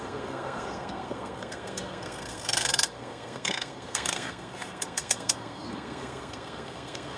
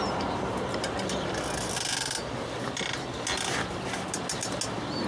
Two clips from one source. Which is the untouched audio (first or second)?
second